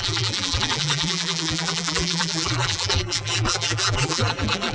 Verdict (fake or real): fake